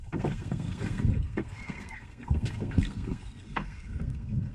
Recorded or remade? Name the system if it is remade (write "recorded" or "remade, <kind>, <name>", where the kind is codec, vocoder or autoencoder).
remade, codec, SNAC